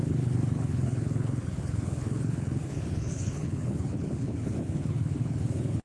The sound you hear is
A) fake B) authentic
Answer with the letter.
A